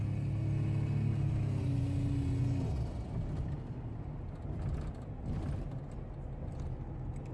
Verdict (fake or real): real